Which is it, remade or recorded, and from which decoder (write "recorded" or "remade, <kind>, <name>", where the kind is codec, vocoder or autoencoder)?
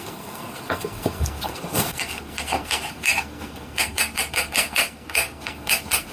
remade, codec, SNAC